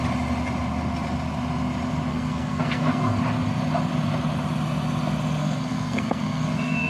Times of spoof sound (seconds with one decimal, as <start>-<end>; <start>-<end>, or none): 2.1-3.2; 5.4-6.9